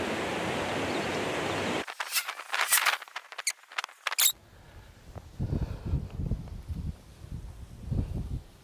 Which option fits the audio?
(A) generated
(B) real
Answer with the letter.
B